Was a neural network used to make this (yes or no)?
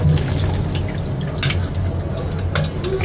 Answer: no